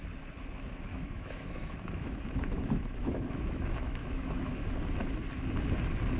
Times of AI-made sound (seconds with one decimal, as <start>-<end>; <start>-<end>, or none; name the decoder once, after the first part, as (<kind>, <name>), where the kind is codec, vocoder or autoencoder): 0.9-4.6 (autoencoder, DAC-VAE)